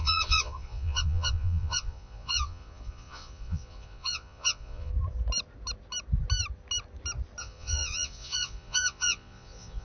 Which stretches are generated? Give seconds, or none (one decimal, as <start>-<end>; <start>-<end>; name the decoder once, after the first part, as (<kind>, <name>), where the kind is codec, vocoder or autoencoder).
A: 0.0-4.9 (vocoder, Vocos); 7.4-9.8